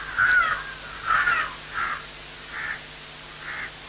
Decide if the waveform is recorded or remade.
recorded